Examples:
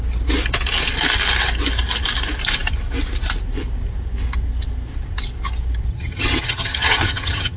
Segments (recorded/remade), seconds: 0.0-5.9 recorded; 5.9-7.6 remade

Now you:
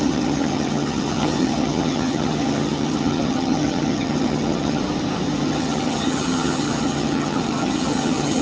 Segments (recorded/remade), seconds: 0.0-4.8 remade; 4.8-5.4 recorded; 5.4-8.4 remade

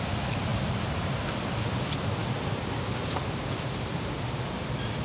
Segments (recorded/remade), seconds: 0.0-5.0 recorded

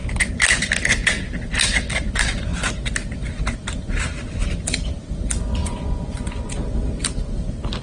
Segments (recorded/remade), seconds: 0.0-5.6 recorded; 5.6-6.5 remade; 6.5-7.8 recorded

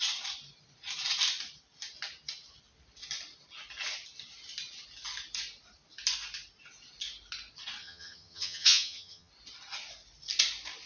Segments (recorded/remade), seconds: 0.0-7.8 recorded; 7.8-9.3 remade; 9.3-10.9 recorded

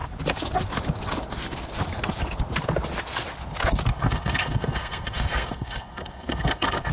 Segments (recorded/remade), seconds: 0.0-3.9 recorded; 3.9-6.9 remade

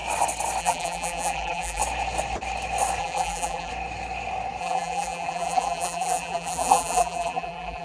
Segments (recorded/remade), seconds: 0.0-0.6 recorded; 0.6-1.8 remade; 1.8-3.0 recorded; 3.0-3.7 remade; 3.7-4.6 recorded; 4.6-7.8 remade